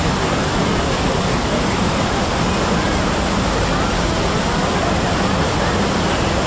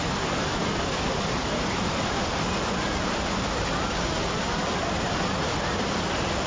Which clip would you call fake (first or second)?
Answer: second